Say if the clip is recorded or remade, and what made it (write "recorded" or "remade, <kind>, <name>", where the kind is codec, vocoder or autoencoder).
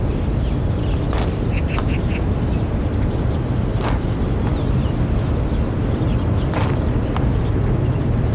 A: recorded